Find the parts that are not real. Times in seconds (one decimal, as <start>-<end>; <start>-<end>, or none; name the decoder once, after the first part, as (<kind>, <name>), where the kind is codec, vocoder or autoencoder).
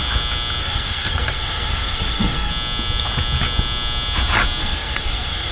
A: 0.6-2.5 (codec, SNAC); 4.6-5.5